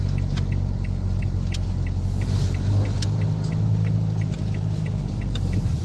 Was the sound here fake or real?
real